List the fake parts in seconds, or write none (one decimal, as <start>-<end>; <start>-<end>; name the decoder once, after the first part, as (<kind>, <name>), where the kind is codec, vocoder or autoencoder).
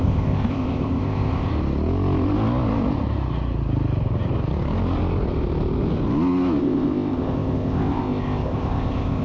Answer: 0.0-1.5 (codec, ZipCodec); 6.6-9.2